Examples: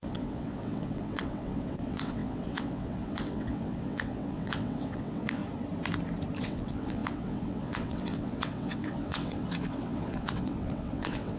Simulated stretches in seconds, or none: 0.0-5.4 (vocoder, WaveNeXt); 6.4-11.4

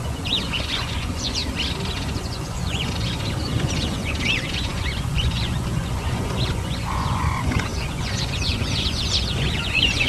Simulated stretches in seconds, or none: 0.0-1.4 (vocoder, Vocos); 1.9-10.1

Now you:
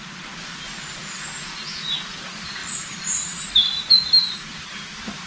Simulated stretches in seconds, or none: 0.4-1.0 (vocoder, BigVGAN v2); 2.6-4.3

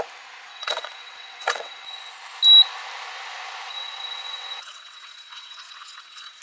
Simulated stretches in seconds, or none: 0.5-2.1 (vocoder, WaveNeXt); 3.7-6.4

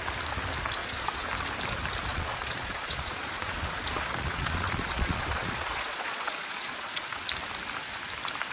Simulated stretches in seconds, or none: 0.8-1.3 (vocoder, Vocos); 2.1-7.2